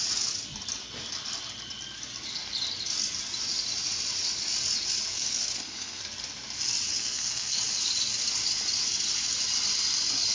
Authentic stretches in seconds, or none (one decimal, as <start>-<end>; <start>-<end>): 0.0-5.1; 6.0-6.9; 7.6-10.3